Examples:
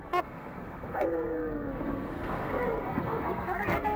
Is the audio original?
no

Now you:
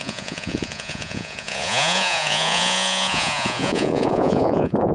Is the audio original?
no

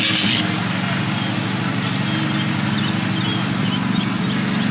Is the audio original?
yes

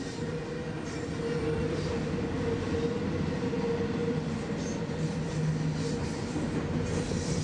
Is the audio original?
yes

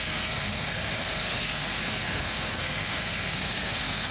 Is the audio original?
no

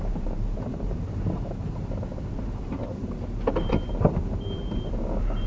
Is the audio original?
no